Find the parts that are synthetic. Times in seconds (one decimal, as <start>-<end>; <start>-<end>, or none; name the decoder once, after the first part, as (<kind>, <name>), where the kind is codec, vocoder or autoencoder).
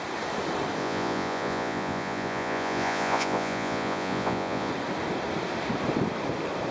0.8-4.7 (vocoder, Vocos)